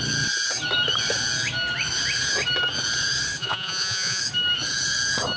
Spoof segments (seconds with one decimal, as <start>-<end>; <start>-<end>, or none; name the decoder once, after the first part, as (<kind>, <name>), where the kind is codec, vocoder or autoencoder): 3.4-4.2 (vocoder, Vocos)